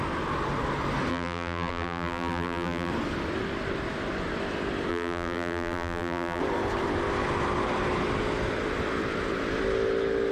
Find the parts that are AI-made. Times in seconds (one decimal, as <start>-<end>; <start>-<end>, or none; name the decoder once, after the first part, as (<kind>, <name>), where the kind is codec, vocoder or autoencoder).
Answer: 1.1-2.9 (vocoder, BigVGAN v2); 4.9-6.4